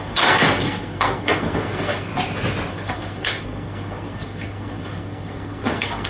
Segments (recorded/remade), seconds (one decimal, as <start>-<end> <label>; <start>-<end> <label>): 0.0-2.1 remade; 2.1-2.7 recorded; 2.7-6.1 remade